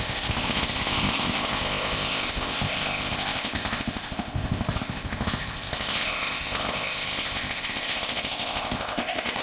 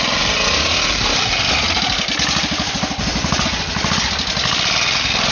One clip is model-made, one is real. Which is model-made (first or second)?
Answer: first